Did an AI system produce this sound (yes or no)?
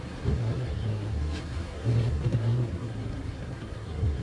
yes